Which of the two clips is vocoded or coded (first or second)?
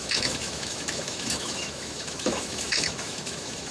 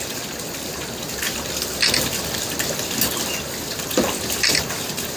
first